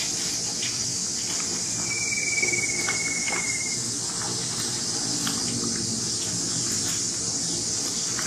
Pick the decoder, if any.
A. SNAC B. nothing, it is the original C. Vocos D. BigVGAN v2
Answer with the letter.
B